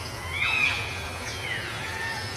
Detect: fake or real fake